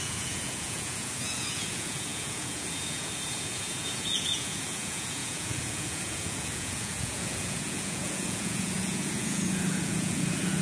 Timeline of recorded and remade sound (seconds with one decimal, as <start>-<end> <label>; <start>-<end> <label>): 0.0-10.6 remade